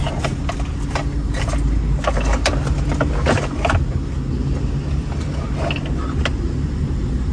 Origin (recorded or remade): recorded